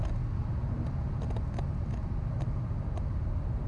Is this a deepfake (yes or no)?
no